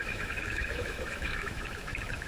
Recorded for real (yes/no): no